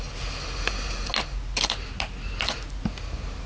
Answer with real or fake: real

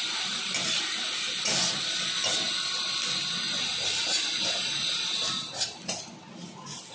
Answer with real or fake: real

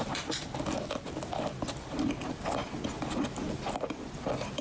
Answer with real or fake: real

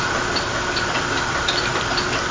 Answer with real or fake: real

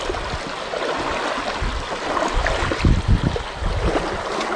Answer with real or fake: real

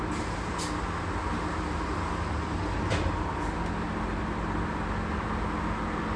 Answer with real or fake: real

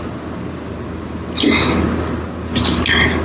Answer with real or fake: real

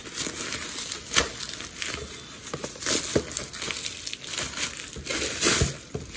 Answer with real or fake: real